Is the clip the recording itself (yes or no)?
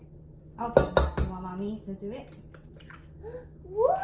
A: yes